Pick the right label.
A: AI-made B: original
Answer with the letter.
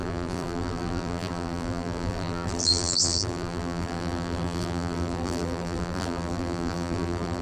A